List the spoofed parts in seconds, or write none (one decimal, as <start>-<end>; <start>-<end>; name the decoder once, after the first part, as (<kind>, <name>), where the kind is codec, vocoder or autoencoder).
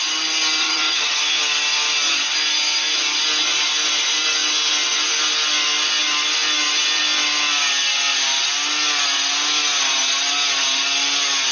0.6-1.2 (vocoder, HiFi-GAN)